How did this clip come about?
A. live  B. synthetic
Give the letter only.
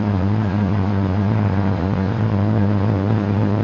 B